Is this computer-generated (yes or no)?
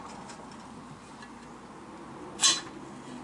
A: no